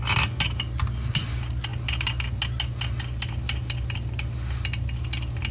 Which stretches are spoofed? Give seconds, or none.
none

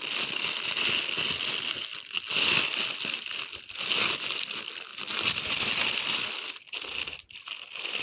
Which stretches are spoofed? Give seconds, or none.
4.9-8.0 (vocoder, BigVGAN v2)